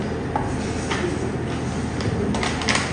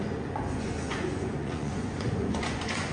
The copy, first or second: second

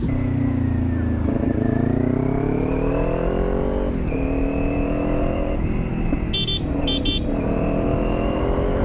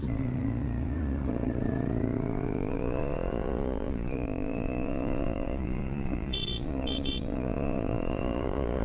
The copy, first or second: second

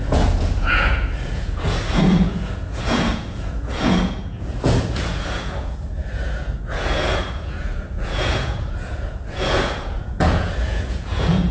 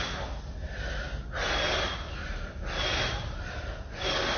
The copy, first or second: first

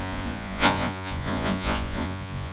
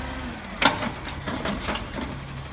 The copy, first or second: first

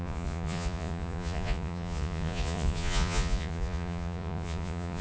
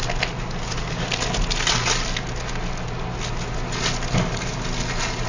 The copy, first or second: first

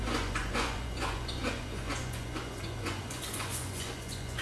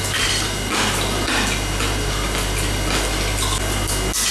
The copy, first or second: first